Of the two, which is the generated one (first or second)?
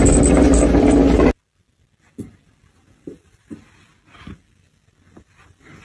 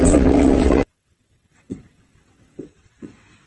second